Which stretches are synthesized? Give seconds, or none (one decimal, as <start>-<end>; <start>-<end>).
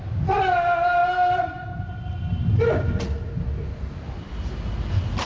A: none